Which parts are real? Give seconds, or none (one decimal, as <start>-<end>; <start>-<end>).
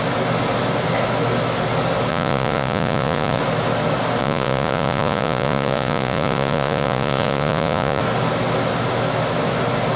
0.0-2.1; 3.4-4.2; 8.0-10.0